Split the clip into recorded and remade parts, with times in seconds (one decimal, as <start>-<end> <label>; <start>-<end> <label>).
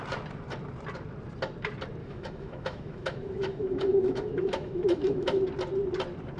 0.0-2.0 recorded; 2.0-5.4 remade; 5.4-6.4 recorded